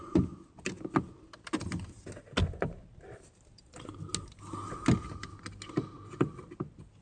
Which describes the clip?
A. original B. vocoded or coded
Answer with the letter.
A